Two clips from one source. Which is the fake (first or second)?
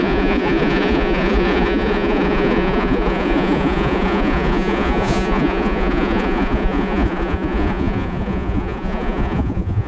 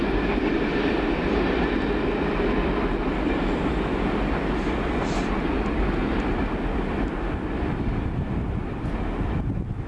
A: first